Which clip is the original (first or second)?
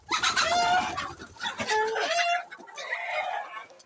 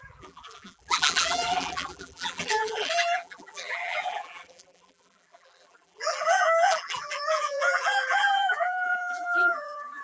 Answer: first